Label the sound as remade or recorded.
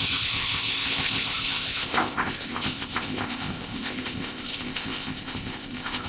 remade